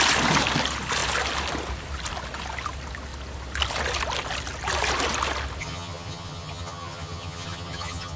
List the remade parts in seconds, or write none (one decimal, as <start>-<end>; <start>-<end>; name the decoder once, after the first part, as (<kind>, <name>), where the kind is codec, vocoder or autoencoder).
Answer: 5.6-8.2 (vocoder, HiFi-GAN)